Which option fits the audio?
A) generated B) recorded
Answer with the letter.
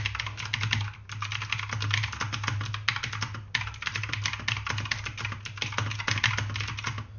B